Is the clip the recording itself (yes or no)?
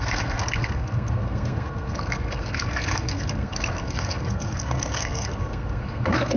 no